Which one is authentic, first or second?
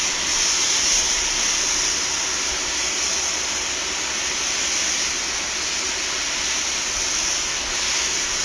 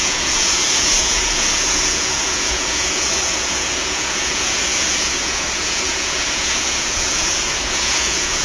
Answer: first